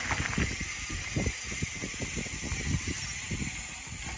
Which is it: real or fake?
real